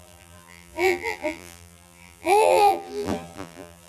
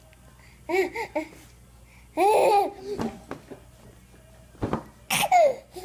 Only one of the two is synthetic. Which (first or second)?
first